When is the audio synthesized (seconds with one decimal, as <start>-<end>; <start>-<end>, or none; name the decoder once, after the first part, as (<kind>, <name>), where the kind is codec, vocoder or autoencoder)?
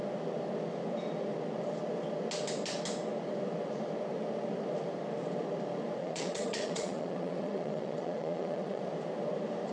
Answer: 6.0-8.8 (vocoder, Vocos)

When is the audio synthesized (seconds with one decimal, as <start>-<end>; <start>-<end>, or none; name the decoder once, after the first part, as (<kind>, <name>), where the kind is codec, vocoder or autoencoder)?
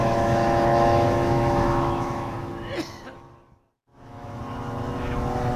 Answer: 0.0-2.5 (autoencoder, DAC-VAE); 3.9-4.4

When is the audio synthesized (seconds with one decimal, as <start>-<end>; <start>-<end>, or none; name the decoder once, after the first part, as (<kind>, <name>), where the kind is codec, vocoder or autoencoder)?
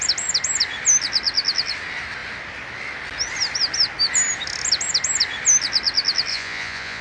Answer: 6.3-7.0 (vocoder, Vocos)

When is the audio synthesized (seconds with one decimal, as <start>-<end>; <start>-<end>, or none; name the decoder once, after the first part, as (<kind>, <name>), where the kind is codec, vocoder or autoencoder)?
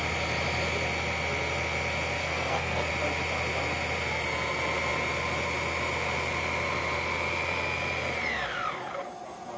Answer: 2.2-2.9 (codec, SNAC)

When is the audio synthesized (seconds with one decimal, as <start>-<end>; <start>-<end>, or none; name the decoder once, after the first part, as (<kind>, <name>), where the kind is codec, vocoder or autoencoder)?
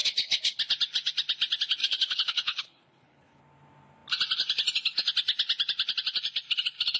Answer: 0.0-0.6 (codec, HILCodec); 1.8-3.4